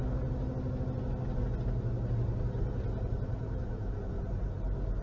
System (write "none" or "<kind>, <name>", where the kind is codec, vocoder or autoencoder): none